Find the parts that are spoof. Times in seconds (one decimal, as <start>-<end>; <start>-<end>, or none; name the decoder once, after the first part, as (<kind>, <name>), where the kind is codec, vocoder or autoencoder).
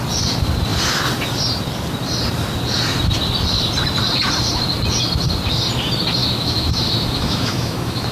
6.2-8.1 (autoencoder, DAC-VAE)